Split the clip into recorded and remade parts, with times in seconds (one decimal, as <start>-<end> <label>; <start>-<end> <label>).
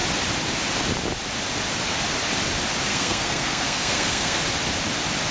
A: 0.0-2.9 recorded; 2.9-4.4 remade; 4.4-5.3 recorded